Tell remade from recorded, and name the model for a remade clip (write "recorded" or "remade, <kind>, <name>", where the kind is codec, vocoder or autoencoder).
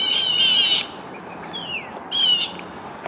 recorded